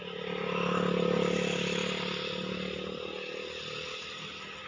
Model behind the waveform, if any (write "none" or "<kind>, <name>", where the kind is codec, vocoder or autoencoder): none